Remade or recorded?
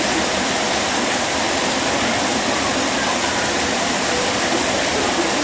recorded